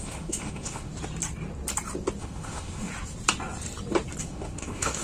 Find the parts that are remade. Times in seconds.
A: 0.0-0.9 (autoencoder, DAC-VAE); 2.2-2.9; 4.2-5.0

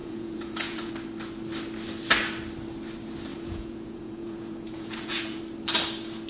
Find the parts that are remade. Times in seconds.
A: 0.0-0.9 (vocoder, Vocos); 3.3-5.4

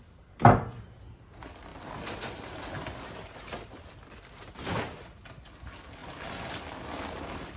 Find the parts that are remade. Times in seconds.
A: none

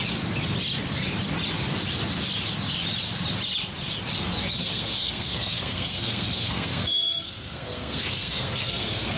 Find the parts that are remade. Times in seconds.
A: 4.6-9.2 (codec, SNAC)

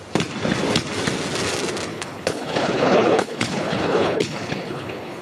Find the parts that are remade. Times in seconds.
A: 1.9-5.2 (codec, HILCodec)

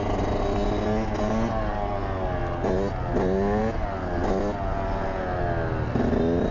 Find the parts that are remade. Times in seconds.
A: none